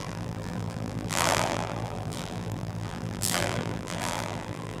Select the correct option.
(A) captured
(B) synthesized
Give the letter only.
B